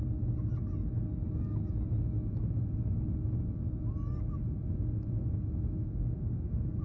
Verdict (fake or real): real